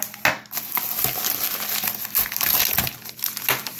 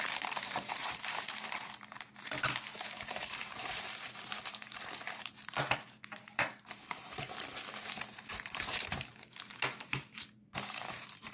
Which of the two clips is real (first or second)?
first